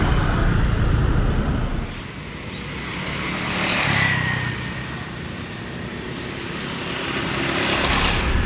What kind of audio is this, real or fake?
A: real